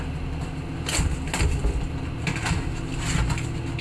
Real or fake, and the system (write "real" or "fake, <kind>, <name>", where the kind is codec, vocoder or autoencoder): real